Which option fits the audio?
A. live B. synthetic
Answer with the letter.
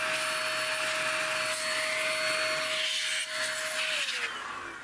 A